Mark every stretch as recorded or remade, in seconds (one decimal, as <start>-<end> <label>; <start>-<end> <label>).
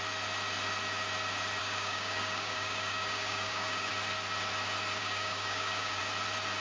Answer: 0.0-1.6 recorded; 1.6-3.9 remade; 3.9-5.0 recorded; 5.0-6.0 remade; 6.0-6.6 recorded